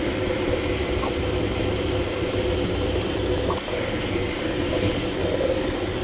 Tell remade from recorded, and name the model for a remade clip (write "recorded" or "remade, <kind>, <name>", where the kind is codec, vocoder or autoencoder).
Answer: recorded